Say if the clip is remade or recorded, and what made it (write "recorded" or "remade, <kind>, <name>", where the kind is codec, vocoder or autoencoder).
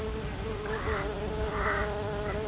recorded